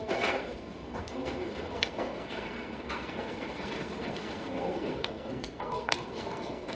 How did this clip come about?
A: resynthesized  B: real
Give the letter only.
A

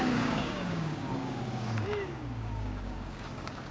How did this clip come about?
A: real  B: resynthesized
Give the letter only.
B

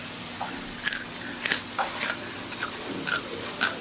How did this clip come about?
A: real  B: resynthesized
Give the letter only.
A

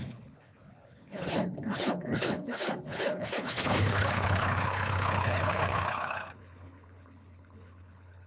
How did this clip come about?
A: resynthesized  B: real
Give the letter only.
A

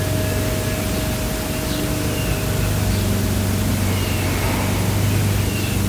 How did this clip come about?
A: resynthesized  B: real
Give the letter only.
B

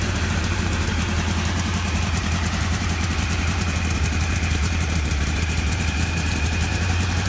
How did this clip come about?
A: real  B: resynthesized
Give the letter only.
B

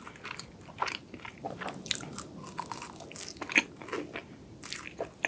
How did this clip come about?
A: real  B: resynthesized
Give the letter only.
A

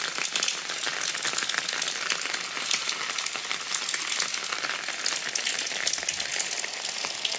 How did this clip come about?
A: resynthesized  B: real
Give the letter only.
B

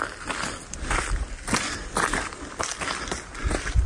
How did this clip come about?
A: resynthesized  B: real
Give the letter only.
B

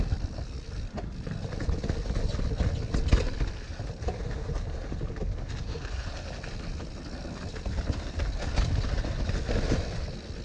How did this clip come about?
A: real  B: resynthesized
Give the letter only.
A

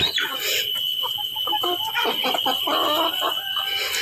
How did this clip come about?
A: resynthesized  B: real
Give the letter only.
B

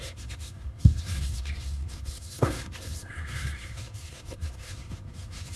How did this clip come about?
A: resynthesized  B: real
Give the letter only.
A